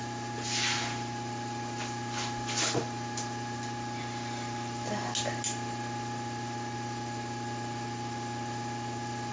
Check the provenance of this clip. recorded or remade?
recorded